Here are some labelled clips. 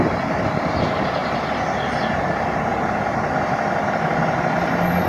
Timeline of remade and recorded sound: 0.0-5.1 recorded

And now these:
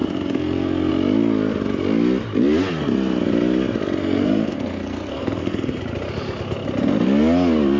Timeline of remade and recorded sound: 0.0-0.9 remade; 0.9-4.0 recorded; 4.0-5.8 remade; 5.8-7.8 recorded

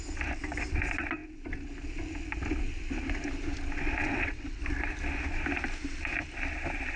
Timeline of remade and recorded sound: 0.0-4.0 recorded; 4.0-4.6 remade; 4.6-7.0 recorded

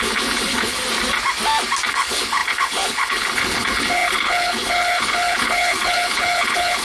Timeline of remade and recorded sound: 0.0-0.8 remade; 0.8-1.9 recorded; 1.9-6.8 remade

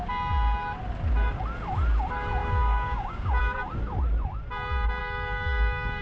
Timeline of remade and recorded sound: 0.0-2.4 recorded; 2.4-3.4 remade; 3.4-5.0 recorded; 5.0-6.0 remade

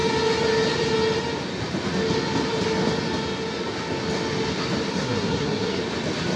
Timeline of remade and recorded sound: 0.0-4.9 recorded; 4.9-5.8 remade; 5.8-6.4 recorded